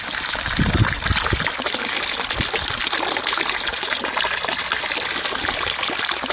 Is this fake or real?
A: fake